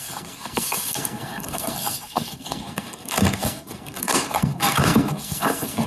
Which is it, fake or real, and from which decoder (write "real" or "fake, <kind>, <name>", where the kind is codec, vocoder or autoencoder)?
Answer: fake, codec, SNAC